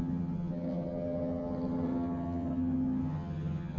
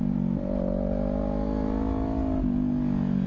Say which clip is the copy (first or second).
first